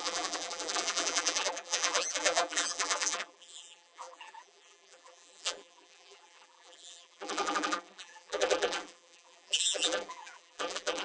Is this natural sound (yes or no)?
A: no